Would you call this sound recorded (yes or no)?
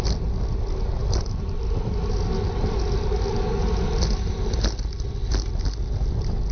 yes